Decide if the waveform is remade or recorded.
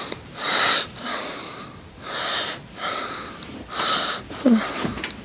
remade